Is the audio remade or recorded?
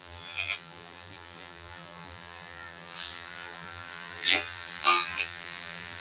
remade